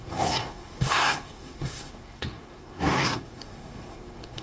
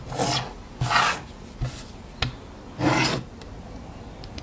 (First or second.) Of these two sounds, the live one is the second